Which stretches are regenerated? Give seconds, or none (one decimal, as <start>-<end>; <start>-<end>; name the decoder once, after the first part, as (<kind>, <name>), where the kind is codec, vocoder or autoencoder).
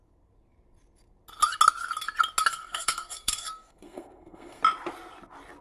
2.5-4.6 (codec, SNAC)